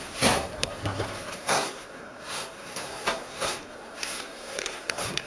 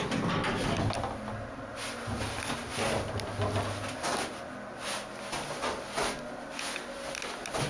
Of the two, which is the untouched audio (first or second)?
second